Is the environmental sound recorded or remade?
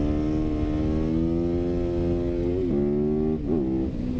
recorded